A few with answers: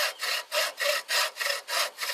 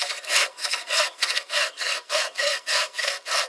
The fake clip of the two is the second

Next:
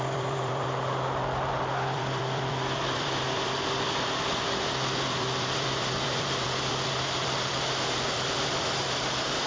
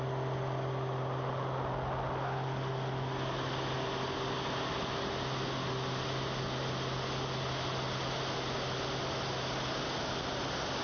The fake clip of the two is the first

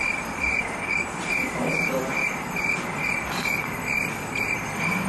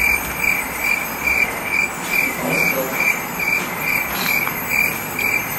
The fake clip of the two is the first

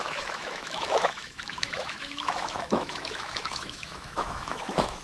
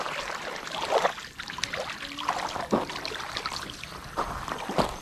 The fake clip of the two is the first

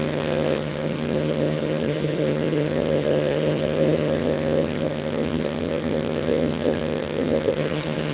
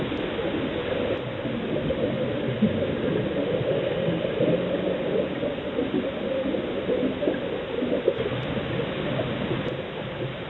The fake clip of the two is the first